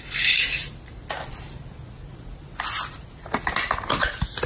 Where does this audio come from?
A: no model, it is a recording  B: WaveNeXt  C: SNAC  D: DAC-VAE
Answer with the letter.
A